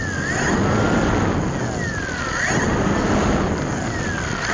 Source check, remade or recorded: recorded